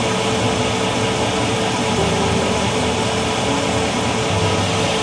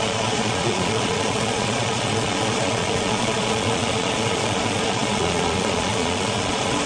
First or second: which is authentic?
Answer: first